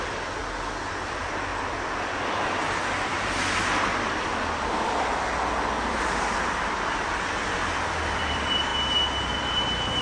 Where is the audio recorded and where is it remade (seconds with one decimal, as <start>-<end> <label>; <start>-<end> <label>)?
0.0-0.4 remade; 0.4-0.9 recorded; 0.9-5.2 remade; 5.2-5.9 recorded; 5.9-8.7 remade; 8.7-9.3 recorded; 9.3-10.0 remade